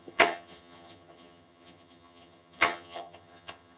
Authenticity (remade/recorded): remade